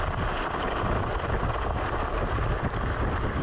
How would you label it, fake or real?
real